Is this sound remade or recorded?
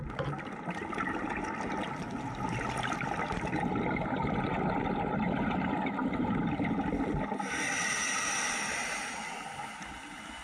recorded